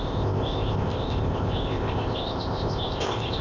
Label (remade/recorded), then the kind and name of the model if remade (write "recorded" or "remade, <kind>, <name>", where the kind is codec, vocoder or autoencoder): remade, codec, ZipCodec